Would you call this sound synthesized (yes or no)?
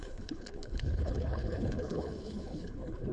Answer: yes